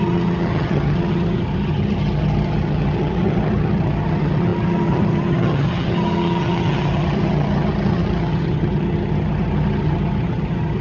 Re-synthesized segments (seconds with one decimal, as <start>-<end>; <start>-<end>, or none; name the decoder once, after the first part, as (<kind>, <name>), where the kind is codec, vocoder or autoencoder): 0.0-10.8 (vocoder, HiFi-GAN)